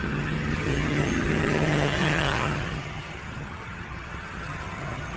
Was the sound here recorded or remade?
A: remade